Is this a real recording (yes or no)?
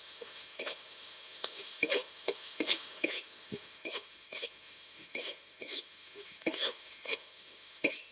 no